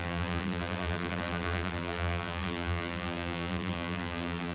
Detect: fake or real fake